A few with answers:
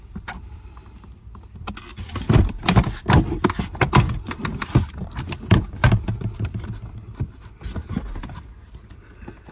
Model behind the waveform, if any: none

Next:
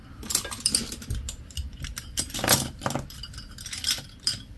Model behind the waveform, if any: none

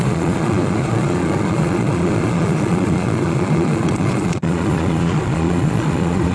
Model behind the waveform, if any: vocoder, Vocos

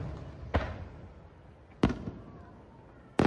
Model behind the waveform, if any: none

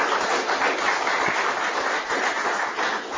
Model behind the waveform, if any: none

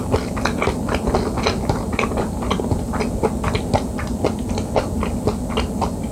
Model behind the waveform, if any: none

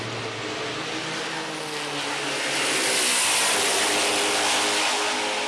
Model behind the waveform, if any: none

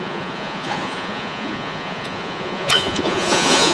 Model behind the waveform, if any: vocoder, Vocos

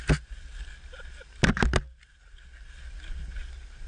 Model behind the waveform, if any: none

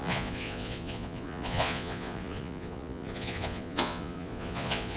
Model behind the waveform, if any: vocoder, Vocos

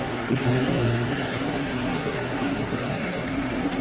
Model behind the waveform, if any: codec, SNAC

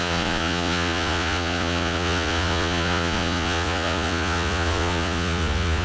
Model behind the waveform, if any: vocoder, Vocos